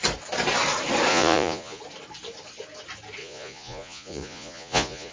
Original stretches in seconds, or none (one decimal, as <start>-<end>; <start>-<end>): 0.0-1.1; 1.8-3.2